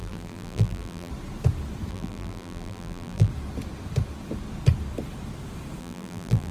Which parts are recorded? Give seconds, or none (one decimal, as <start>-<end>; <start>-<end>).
1.1-1.9; 3.3-5.8